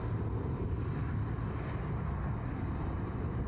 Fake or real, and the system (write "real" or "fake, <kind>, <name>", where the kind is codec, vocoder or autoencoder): real